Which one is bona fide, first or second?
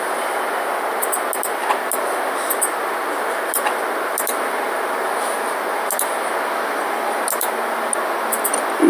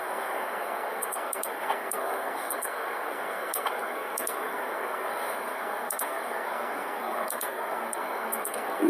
first